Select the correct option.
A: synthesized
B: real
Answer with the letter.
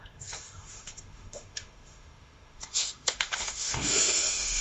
A